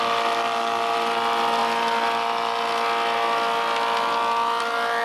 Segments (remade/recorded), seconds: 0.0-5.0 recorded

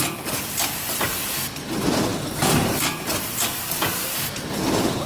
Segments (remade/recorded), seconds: 0.0-5.1 remade

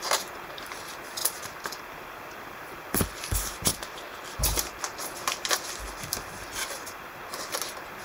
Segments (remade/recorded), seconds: 0.0-8.0 recorded